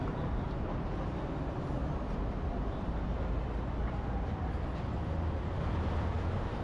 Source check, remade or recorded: recorded